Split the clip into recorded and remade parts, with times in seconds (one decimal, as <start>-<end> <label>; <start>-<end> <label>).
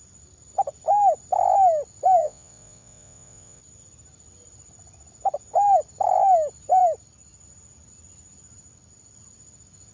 0.0-2.2 recorded; 2.2-3.6 remade; 3.6-9.9 recorded